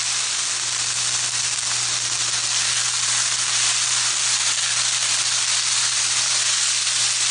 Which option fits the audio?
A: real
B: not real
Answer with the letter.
A